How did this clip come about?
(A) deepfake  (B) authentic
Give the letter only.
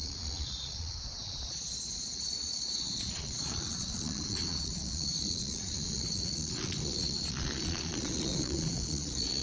A